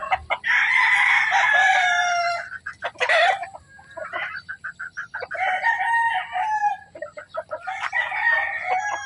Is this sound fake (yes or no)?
yes